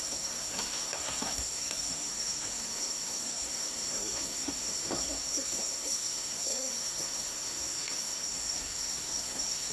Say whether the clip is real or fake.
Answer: fake